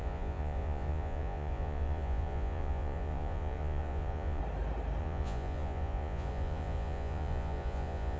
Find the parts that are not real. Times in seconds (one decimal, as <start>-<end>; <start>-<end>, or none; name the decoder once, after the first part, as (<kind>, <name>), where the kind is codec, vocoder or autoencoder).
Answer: 0.0-4.4 (vocoder, Vocos); 5.0-8.2